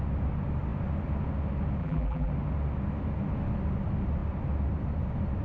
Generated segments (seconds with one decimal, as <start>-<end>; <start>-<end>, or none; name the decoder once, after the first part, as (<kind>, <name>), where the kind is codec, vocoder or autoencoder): 1.8-2.3 (vocoder, BigVGAN v2)